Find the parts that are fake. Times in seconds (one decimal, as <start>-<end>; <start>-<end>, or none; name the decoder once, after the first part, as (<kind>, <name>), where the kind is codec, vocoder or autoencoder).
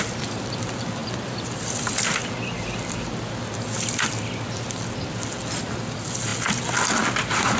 none